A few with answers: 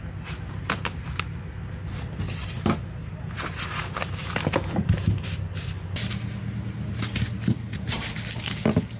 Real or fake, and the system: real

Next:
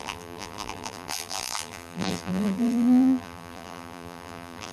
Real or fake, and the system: fake, vocoder, BigVGAN v2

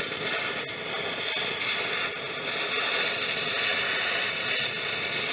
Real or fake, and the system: real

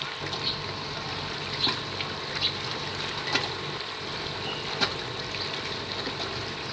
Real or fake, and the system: real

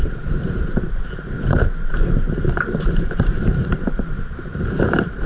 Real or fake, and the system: fake, vocoder, BigVGAN v2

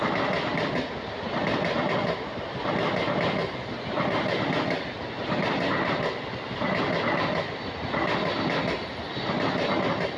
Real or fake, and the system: real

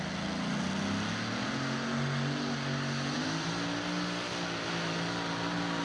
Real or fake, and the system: real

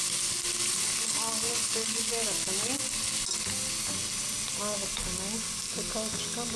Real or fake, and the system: real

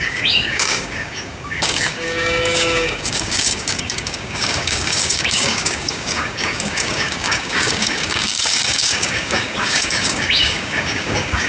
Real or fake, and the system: fake, codec, DAC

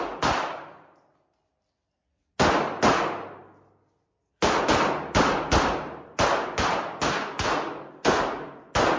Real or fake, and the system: real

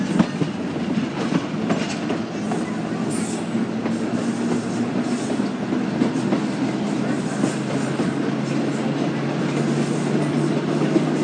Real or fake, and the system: real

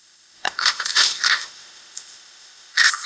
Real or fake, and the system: fake, codec, ZipCodec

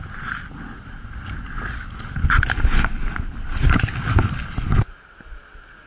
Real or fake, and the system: real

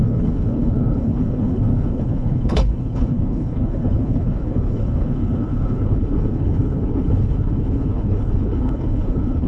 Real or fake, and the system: fake, codec, HILCodec